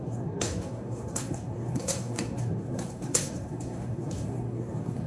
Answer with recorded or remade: remade